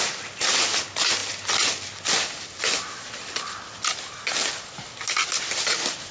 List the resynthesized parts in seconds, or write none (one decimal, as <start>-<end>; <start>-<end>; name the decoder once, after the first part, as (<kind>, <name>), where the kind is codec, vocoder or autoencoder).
none